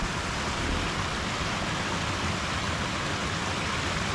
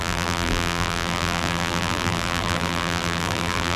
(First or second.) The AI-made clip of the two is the second